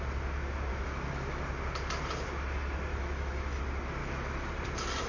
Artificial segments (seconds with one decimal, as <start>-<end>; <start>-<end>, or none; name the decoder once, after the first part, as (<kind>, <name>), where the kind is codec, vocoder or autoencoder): 0.7-1.4 (autoencoder, DAC-VAE); 2.9-3.6; 4.0-4.5